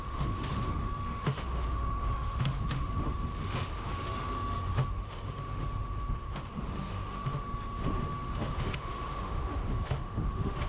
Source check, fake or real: fake